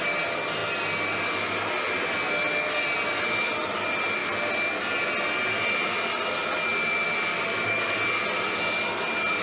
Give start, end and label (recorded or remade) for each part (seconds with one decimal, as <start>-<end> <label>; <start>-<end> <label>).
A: 0.0-9.4 recorded